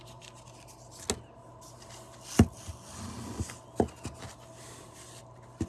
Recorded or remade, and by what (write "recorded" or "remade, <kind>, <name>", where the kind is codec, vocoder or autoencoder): recorded